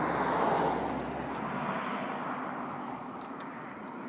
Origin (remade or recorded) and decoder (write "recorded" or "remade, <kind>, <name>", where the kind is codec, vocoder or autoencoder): recorded